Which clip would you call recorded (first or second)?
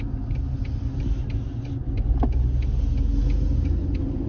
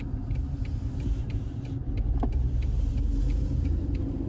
first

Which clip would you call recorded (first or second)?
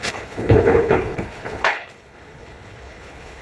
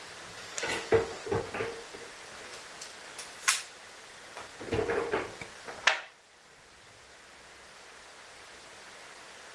second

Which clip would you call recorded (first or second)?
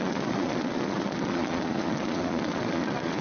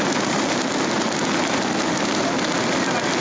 second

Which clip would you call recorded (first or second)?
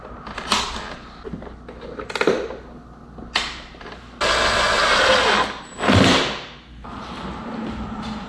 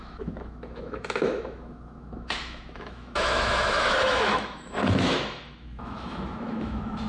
first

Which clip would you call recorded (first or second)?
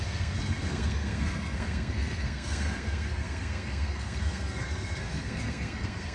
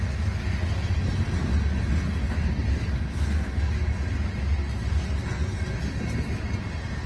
second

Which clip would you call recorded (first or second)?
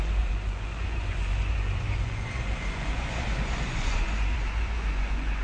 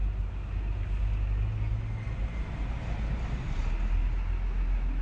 second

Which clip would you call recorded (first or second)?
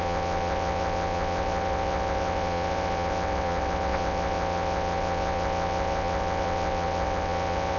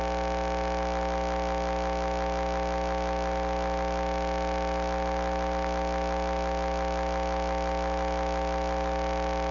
second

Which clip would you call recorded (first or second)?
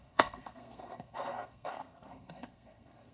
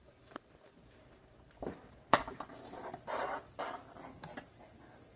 second